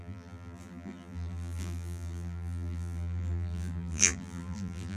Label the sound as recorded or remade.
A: remade